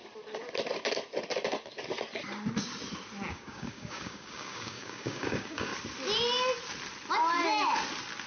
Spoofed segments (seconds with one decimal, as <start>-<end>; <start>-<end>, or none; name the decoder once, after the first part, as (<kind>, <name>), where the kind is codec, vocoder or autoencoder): 3.3-5.7 (codec, DAC)

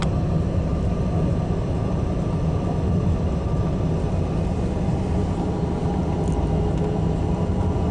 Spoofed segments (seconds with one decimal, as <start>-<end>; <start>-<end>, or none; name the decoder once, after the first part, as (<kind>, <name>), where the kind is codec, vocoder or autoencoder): none

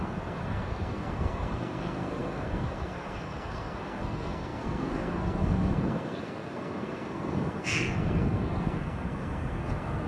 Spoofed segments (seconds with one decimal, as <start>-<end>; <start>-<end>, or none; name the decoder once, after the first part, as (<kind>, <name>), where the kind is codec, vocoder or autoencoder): 0.0-10.1 (codec, SNAC)

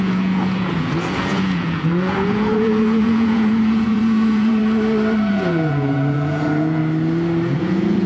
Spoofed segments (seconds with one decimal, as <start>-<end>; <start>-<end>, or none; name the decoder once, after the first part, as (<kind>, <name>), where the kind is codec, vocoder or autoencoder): 0.0-4.6 (vocoder, Vocos); 5.3-6.8; 7.5-8.1

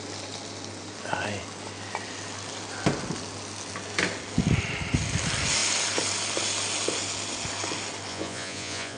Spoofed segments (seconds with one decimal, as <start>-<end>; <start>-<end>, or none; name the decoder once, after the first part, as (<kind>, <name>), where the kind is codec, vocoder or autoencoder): 8.1-9.0 (vocoder, Vocos)

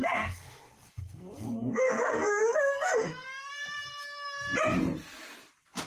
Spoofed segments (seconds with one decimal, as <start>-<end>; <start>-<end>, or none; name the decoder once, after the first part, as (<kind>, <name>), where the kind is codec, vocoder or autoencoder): 0.0-3.5 (codec, SNAC)